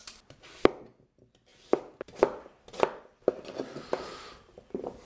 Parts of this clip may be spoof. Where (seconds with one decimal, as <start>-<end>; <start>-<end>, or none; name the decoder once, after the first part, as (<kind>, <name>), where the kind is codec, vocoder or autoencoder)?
none